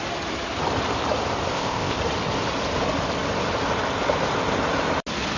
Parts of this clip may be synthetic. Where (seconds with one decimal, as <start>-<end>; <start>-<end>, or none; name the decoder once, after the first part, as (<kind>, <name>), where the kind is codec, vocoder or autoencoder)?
1.5-2.0 (codec, ZipCodec)

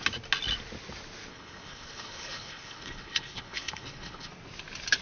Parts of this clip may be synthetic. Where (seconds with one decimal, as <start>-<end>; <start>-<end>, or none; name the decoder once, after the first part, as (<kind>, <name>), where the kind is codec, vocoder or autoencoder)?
1.3-4.3 (codec, HILCodec)

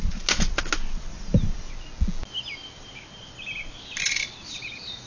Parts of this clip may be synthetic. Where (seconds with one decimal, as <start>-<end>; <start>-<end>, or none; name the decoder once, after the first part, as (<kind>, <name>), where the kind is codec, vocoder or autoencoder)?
1.1-1.7 (vocoder, BigVGAN v2)

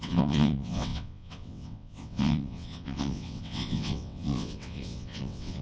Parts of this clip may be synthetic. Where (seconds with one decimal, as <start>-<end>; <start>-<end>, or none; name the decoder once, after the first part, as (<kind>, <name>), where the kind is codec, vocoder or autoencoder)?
0.0-5.6 (vocoder, WaveNeXt)

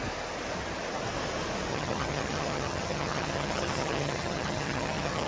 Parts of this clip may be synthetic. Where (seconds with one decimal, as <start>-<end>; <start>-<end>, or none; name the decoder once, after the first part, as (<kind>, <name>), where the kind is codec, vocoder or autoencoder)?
1.7-5.3 (vocoder, HiFi-GAN)

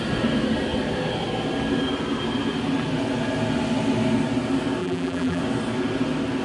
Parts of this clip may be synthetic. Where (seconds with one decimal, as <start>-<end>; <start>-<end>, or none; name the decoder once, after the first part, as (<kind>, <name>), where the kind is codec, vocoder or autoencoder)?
4.8-5.4 (vocoder, BigVGAN v2)

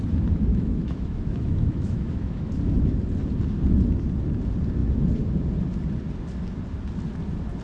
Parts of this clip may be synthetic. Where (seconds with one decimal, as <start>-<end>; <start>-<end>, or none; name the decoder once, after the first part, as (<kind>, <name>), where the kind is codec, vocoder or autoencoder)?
0.5-2.6 (autoencoder, DAC-VAE)